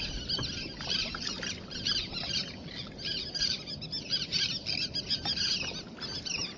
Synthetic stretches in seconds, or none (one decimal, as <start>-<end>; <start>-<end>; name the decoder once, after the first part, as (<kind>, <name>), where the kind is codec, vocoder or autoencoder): none